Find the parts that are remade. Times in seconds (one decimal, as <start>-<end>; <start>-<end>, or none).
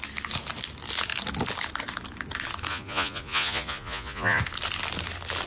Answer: 2.7-4.4